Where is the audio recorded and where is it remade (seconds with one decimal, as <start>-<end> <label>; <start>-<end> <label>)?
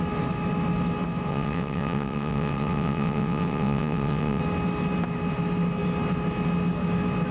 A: 0.0-1.3 recorded; 1.3-4.4 remade; 4.4-7.3 recorded